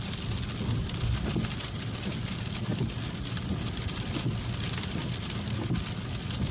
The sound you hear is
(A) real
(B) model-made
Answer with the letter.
A